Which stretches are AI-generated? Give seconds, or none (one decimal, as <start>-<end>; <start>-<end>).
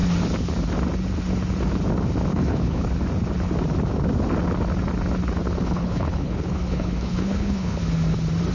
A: 2.3-2.9; 5.6-7.8